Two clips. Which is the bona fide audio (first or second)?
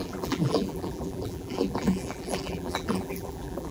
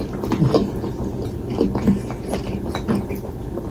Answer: second